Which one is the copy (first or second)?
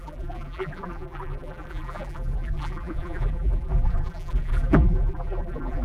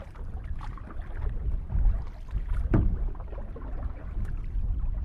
first